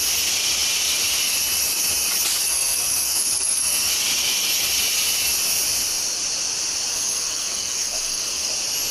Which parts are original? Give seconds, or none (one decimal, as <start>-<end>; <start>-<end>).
0.0-2.4; 3.9-6.9; 8.5-8.9